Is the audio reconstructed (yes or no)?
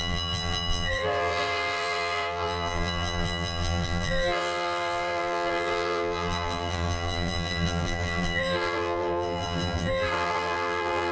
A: yes